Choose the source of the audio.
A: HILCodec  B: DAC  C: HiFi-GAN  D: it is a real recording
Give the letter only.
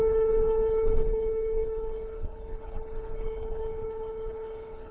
A